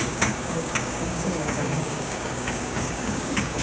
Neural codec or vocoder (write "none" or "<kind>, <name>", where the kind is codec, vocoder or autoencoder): codec, DAC